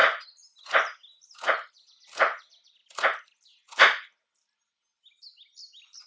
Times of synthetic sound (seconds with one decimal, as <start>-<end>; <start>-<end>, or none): none